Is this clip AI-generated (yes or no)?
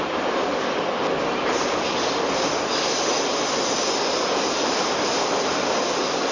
no